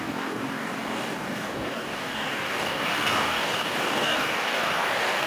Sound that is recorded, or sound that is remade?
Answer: remade